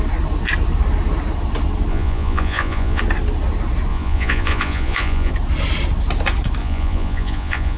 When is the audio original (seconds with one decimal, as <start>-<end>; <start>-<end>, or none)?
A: 0.0-1.9; 3.0-3.9; 5.3-6.6

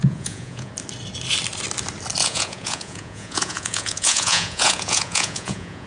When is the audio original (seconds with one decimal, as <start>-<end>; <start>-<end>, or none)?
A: 0.7-2.2

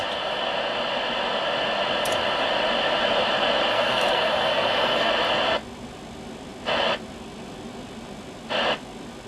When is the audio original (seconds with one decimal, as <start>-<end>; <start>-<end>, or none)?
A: 0.0-3.7; 5.1-9.3

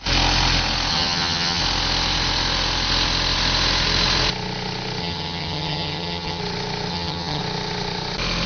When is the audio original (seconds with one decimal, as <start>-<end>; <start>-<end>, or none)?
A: 0.0-0.9; 1.6-5.0; 6.4-6.9; 7.4-8.5

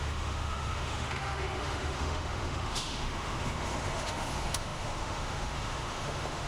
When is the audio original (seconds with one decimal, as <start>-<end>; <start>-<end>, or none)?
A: none

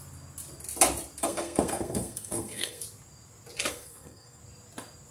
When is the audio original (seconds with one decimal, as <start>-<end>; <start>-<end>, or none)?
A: 0.0-1.2; 2.8-3.7; 4.4-5.1

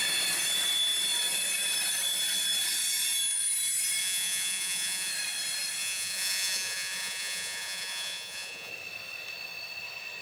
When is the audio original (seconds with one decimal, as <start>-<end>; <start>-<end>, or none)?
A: 0.0-4.0; 5.1-5.8; 8.7-10.2